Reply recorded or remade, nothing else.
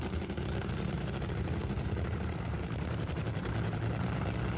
remade